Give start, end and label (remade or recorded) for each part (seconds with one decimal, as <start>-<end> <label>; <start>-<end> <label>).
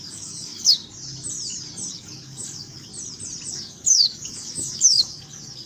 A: 0.0-0.8 remade; 0.8-1.9 recorded; 1.9-2.9 remade; 2.9-3.5 recorded; 3.5-5.7 remade